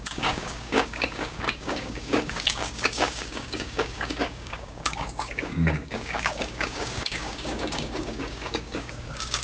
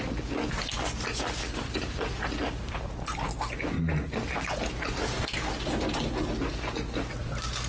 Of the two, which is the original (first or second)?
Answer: second